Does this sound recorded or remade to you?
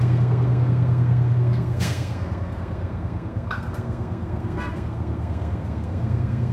remade